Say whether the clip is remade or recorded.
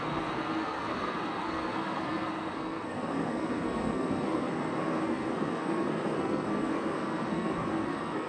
remade